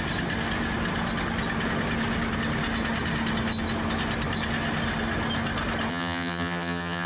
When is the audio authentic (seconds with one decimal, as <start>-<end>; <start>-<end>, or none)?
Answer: 0.0-5.9